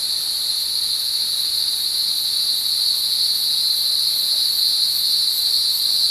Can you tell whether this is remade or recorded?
recorded